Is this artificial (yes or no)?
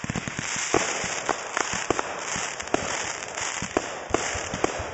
yes